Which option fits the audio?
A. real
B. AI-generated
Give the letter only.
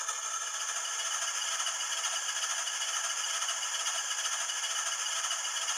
A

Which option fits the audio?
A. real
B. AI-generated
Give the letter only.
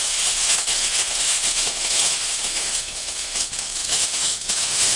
B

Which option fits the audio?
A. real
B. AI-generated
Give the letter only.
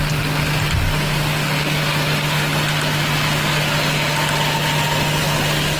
A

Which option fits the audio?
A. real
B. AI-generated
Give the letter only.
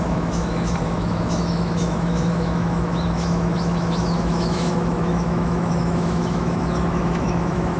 B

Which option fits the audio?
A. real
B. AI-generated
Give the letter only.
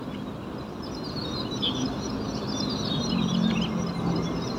A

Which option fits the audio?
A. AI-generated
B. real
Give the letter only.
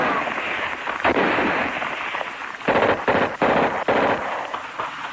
B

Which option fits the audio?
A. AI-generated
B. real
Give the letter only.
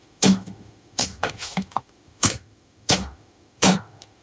A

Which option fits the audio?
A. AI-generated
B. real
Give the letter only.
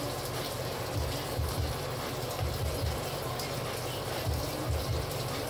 B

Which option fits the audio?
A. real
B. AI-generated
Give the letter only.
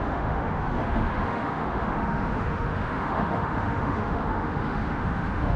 B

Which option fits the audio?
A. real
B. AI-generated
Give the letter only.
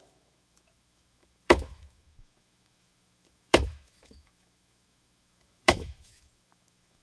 B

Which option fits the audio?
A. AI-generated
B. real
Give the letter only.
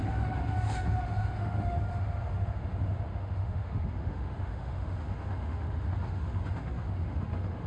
A